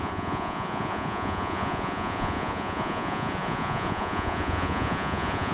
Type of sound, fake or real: fake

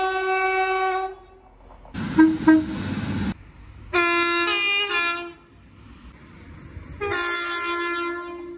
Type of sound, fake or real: real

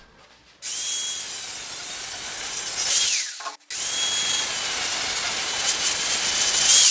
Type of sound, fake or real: real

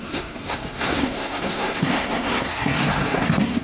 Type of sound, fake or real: fake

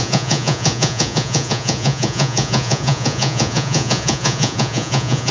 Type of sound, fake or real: fake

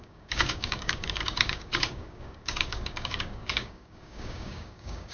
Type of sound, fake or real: fake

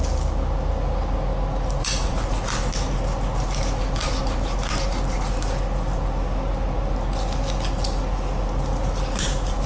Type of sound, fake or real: real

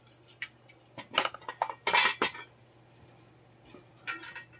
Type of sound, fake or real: real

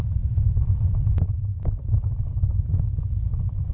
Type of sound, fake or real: real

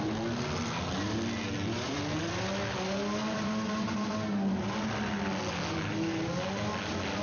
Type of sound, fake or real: real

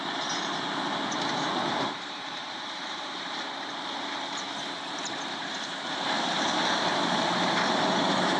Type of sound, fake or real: fake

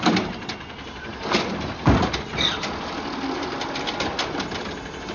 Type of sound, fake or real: real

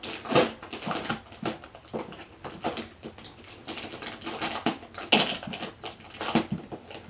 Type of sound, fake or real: real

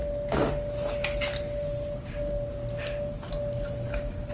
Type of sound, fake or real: real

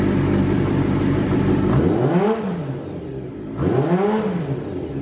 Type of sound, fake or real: real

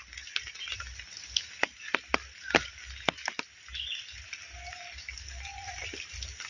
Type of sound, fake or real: real